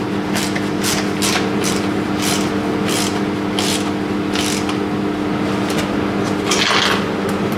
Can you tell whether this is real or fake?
real